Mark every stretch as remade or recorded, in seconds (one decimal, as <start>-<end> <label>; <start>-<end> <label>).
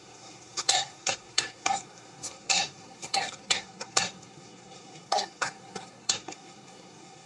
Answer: 0.0-7.3 remade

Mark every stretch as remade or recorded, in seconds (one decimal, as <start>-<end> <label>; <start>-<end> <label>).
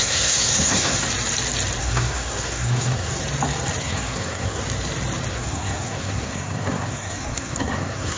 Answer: 0.0-1.0 remade; 1.0-1.8 recorded; 1.8-3.2 remade; 3.2-3.8 recorded; 3.8-4.6 remade; 4.6-5.3 recorded; 5.3-8.2 remade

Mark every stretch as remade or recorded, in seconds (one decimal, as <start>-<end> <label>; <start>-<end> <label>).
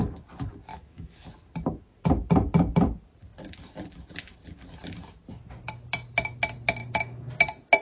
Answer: 0.0-0.7 recorded; 0.7-1.3 remade; 1.3-6.8 recorded; 6.8-7.3 remade; 7.3-7.8 recorded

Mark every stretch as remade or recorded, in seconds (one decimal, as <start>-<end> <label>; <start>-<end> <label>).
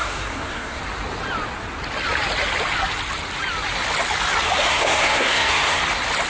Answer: 0.0-0.8 remade; 0.8-4.7 recorded; 4.7-5.8 remade; 5.8-6.3 recorded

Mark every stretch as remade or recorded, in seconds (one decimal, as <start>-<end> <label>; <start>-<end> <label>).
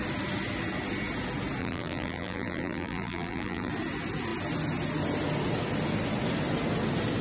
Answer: 0.0-1.6 recorded; 1.6-3.7 remade; 3.7-7.2 recorded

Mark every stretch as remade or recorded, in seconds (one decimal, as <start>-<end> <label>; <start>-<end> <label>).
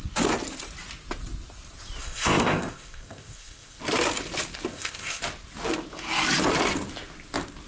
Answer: 0.0-2.0 recorded; 2.0-3.8 remade; 3.8-4.7 recorded; 4.7-5.2 remade; 5.2-7.7 recorded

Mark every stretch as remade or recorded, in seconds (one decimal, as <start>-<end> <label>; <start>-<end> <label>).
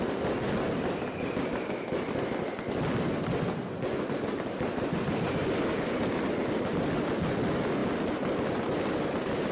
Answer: 0.0-9.5 recorded